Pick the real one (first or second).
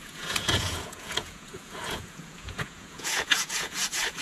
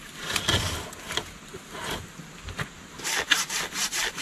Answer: second